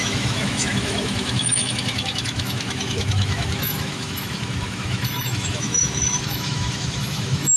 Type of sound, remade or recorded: remade